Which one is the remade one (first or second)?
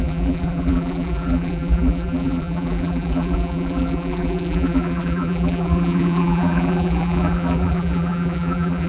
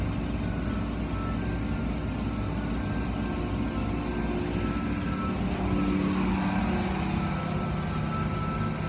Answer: first